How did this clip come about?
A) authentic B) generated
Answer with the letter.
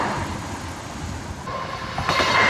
A